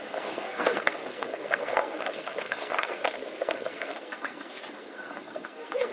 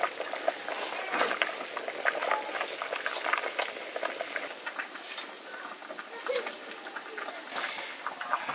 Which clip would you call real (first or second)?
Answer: second